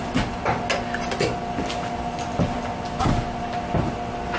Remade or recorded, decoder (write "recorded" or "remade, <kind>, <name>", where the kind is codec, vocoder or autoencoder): recorded